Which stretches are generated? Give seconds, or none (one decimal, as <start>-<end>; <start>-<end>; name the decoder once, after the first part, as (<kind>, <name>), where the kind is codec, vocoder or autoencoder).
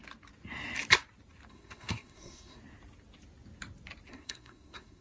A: 1.5-2.6 (codec, SNAC); 4.1-5.0